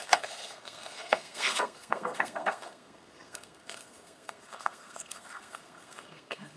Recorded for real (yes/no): no